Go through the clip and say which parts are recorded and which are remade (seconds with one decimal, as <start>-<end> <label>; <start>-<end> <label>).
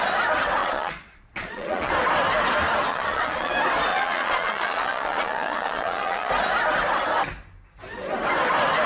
0.0-0.6 recorded; 0.6-1.9 remade; 1.9-2.9 recorded; 2.9-3.5 remade; 3.5-3.9 recorded; 3.9-6.3 remade; 6.3-8.9 recorded